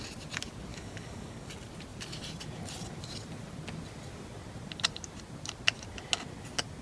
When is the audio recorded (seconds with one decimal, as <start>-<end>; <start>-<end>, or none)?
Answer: 0.0-0.7; 1.5-6.8